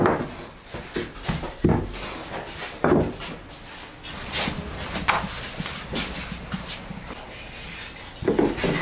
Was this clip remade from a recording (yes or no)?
no